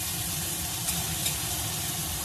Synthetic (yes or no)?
yes